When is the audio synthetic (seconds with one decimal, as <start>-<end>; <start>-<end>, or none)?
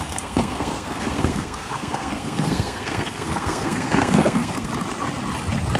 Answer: 0.0-4.7